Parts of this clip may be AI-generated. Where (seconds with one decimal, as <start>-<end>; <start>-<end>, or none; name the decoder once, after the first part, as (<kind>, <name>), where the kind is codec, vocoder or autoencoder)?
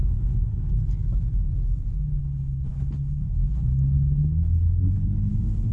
0.0-0.7 (codec, HILCodec); 2.2-5.7